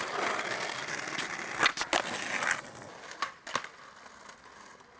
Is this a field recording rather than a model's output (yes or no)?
yes